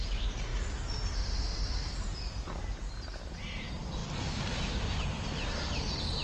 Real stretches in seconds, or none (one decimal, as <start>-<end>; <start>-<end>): 0.0-6.2